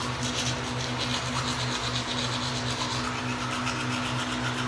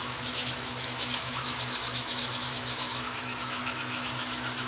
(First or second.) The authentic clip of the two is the first